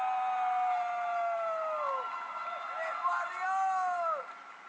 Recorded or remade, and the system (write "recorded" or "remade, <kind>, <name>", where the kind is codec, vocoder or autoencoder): recorded